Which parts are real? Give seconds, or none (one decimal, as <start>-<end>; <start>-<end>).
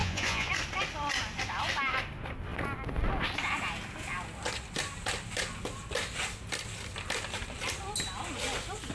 0.5-8.9